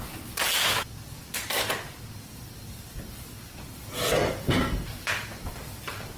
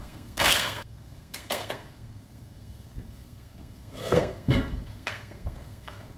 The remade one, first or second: second